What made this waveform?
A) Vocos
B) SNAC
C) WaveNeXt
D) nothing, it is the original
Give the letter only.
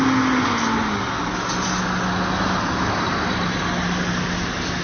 D